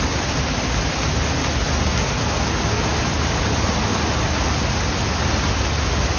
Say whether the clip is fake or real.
real